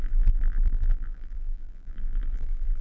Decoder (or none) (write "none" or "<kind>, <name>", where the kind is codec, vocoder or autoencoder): vocoder, BigVGAN v2